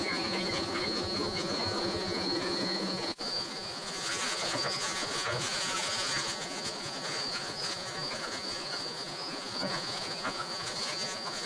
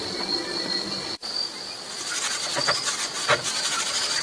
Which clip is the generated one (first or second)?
first